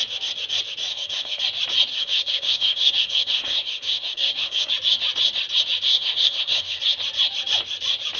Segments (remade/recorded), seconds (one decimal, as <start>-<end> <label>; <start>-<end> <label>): 0.0-0.9 recorded; 0.9-1.4 remade; 1.4-1.9 recorded; 1.9-4.7 remade; 4.7-5.9 recorded; 5.9-6.8 remade; 6.8-8.2 recorded